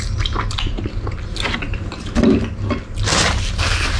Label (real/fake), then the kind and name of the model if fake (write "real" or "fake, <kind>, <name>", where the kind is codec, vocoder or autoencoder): real